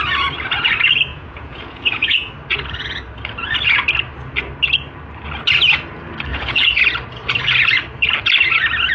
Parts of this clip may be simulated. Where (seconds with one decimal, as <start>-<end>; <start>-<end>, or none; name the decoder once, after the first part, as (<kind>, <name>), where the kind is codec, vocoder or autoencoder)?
1.1-2.3 (vocoder, Vocos); 6.3-6.8